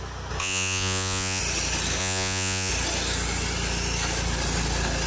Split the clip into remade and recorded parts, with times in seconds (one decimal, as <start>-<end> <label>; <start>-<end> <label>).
0.0-0.4 recorded; 0.4-1.4 remade; 1.4-2.0 recorded; 2.0-2.7 remade; 2.7-5.1 recorded